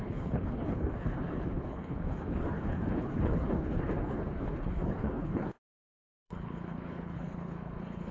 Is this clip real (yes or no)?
no